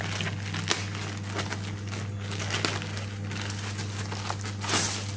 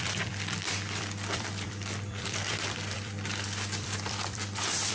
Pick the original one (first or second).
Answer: first